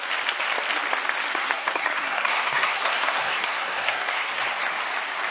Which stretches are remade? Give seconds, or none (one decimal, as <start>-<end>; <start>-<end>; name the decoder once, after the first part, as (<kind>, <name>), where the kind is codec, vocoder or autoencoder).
1.3-4.4 (codec, SNAC)